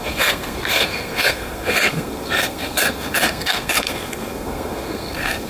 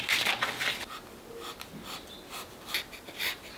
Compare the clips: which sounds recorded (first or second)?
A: second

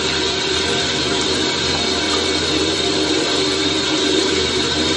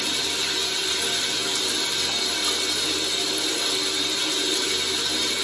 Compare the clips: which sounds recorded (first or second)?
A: second